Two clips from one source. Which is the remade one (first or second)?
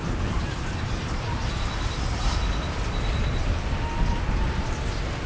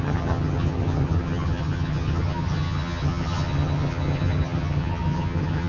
second